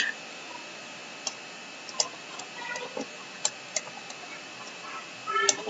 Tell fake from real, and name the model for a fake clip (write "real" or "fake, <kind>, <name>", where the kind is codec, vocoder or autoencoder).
real